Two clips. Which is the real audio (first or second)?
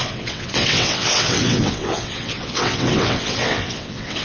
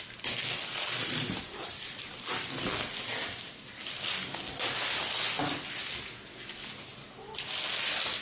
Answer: second